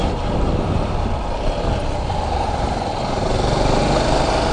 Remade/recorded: recorded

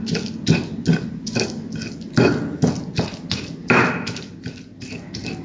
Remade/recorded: recorded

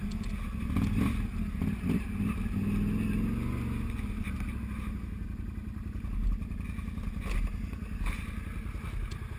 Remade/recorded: recorded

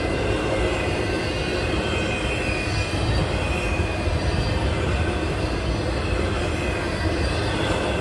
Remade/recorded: recorded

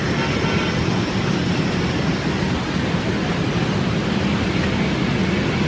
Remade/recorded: recorded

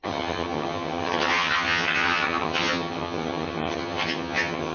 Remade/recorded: remade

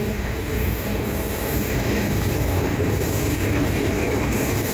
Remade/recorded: remade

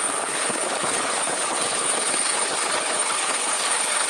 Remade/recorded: remade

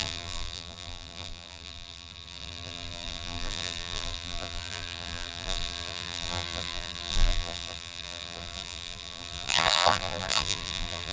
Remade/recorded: remade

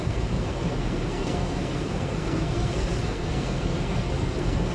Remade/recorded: remade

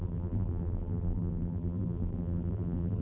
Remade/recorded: remade